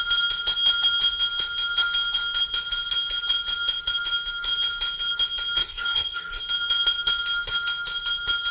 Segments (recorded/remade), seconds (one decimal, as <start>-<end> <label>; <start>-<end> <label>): 0.0-5.6 recorded; 5.6-6.4 remade; 6.4-8.5 recorded